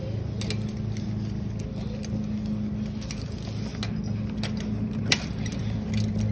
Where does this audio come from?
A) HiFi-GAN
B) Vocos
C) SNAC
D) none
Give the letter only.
D